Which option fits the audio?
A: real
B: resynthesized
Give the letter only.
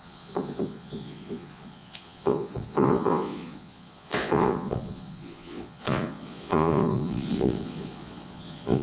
B